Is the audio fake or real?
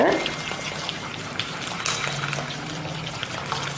real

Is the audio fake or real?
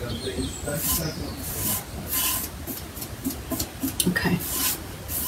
real